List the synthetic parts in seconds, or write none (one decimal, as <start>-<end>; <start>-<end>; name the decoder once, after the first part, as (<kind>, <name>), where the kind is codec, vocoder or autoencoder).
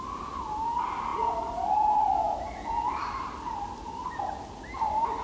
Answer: none